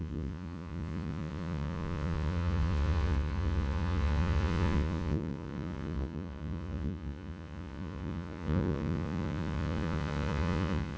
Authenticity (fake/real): fake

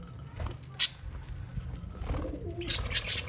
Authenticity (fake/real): real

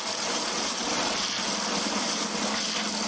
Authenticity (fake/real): real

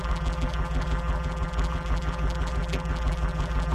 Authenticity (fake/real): fake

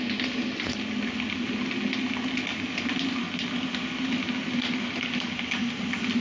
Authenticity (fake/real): real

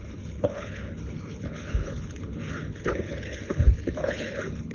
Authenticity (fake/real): fake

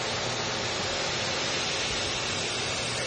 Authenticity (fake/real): real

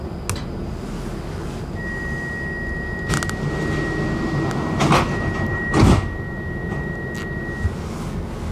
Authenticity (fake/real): real